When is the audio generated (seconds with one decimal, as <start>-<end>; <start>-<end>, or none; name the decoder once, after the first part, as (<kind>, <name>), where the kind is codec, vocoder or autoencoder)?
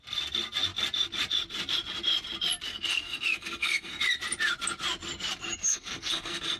2.7-4.0 (codec, SNAC); 5.6-6.6